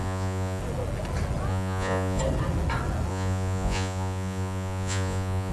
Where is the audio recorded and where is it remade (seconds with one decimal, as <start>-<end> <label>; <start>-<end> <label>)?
0.0-0.6 remade; 0.6-1.5 recorded; 1.5-2.2 remade; 2.2-3.1 recorded; 3.1-5.5 remade